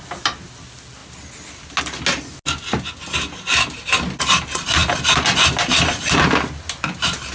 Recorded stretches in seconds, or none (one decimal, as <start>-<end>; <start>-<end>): 0.0-7.3